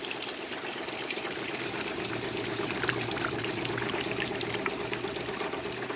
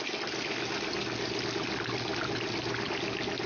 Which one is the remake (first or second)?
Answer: first